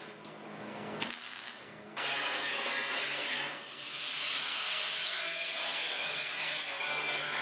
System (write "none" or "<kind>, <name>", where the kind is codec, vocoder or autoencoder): codec, SNAC